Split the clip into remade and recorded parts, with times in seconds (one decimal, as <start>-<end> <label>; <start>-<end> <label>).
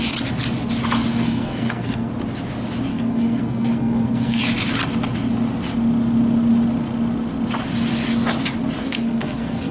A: 0.0-1.1 recorded; 1.1-2.1 remade; 2.1-2.9 recorded; 2.9-4.4 remade; 4.4-8.8 recorded; 8.8-9.7 remade